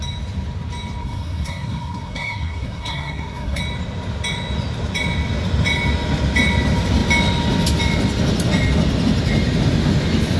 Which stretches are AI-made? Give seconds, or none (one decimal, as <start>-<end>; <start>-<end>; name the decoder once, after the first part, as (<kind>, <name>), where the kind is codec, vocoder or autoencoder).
1.0-3.6 (codec, SNAC)